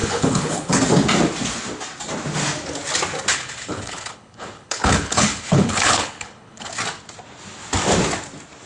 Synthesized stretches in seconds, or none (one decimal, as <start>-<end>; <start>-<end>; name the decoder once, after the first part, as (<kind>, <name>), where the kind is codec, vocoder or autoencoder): 0.0-0.8 (codec, HILCodec); 3.3-6.7